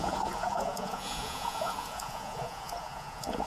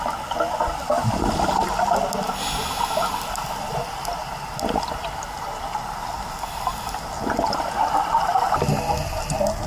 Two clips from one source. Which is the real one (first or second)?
second